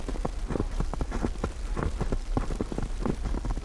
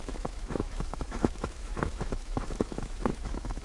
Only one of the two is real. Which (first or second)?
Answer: first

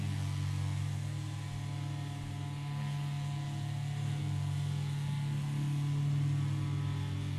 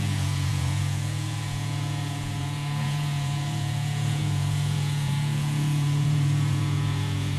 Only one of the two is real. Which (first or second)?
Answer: first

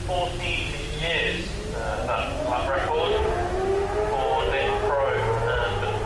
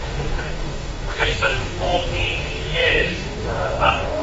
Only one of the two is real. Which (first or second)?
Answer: first